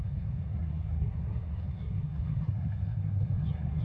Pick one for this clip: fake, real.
fake